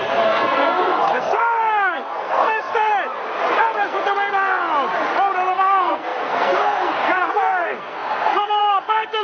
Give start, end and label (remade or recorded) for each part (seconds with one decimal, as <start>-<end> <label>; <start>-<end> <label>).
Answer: 0.0-2.9 remade; 2.9-3.5 recorded; 3.5-4.6 remade; 4.6-5.5 recorded; 5.5-9.2 remade